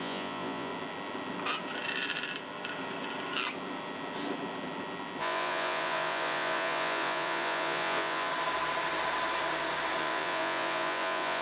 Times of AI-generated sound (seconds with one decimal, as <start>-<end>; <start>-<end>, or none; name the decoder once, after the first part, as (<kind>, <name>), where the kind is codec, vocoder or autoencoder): 0.0-0.7 (vocoder, Vocos); 5.2-8.3; 10.0-11.4